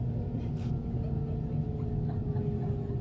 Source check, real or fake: real